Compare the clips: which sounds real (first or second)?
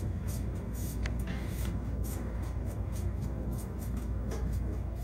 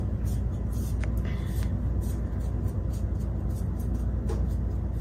second